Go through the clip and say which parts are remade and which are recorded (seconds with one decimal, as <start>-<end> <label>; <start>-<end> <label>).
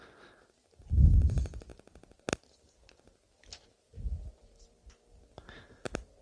0.0-6.2 recorded